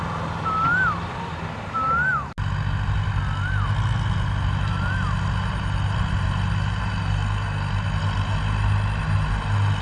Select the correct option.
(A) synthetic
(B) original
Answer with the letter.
B